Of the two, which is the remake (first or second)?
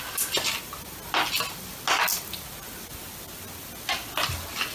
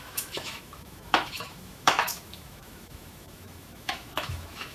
second